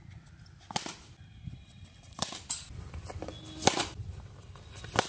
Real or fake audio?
real